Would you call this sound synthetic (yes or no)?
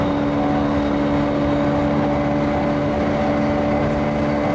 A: no